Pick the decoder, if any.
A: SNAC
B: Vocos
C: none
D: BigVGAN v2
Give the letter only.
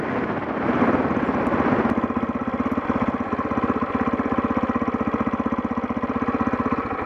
C